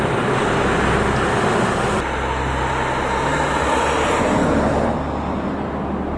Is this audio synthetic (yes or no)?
no